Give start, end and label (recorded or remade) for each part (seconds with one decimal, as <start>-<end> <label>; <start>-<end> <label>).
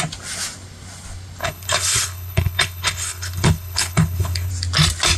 0.0-1.4 recorded; 1.4-4.5 remade; 4.5-5.2 recorded